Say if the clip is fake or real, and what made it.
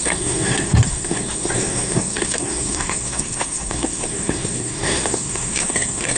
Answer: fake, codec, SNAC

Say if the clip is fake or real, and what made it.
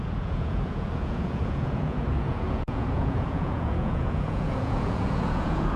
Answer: fake, vocoder, Vocos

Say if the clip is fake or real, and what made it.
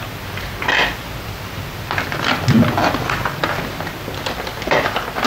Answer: real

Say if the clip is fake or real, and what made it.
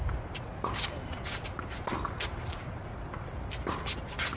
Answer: real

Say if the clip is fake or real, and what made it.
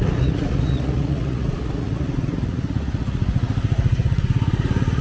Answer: fake, vocoder, Vocos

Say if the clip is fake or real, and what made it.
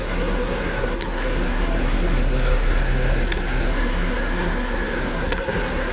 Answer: fake, codec, SNAC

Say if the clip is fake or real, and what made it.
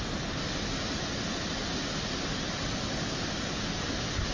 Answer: real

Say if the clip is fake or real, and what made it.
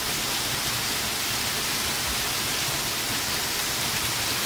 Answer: real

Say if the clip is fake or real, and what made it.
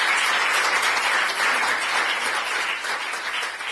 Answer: real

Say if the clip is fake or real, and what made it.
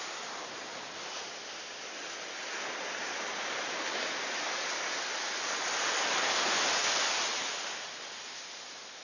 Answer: real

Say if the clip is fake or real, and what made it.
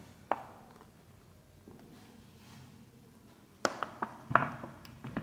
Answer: real